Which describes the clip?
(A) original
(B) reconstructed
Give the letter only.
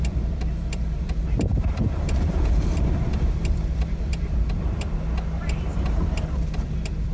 B